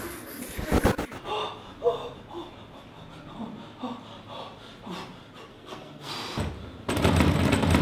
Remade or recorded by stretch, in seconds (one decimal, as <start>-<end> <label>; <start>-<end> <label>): 0.0-5.5 recorded; 5.5-6.1 remade; 6.1-7.8 recorded